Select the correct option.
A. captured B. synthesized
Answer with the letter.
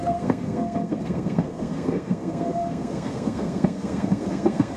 B